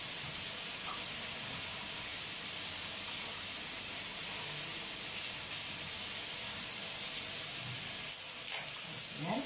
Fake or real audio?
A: real